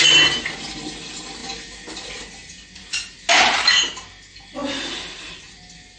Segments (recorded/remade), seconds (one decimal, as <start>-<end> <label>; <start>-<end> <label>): 0.0-6.0 recorded